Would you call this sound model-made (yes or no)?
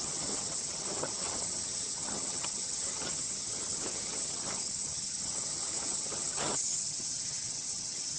yes